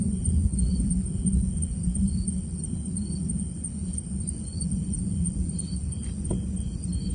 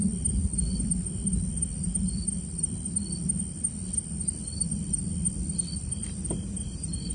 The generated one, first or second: first